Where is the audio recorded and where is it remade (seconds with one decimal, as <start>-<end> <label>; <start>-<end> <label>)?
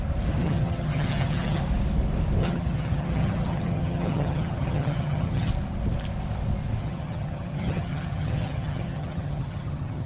0.0-0.4 recorded; 0.4-1.6 remade; 1.6-2.4 recorded; 2.4-5.5 remade; 5.5-6.8 recorded; 6.8-10.1 remade